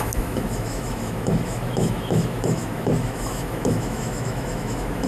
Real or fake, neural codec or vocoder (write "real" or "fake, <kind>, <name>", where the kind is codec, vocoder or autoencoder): fake, autoencoder, DAC-VAE